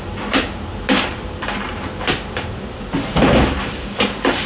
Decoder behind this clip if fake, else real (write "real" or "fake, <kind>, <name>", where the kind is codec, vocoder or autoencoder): fake, vocoder, BigVGAN v2